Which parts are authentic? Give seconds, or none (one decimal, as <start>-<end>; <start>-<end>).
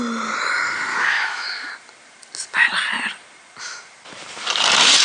0.0-0.9; 1.7-5.0